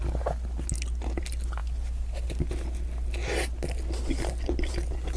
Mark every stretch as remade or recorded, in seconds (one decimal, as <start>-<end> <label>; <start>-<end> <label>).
0.0-5.2 recorded